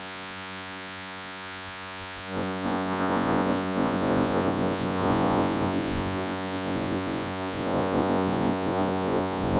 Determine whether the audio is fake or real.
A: fake